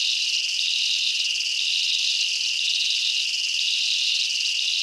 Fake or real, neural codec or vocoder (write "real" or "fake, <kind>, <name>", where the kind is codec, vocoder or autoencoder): real